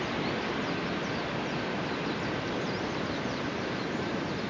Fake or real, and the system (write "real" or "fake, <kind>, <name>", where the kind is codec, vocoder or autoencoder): real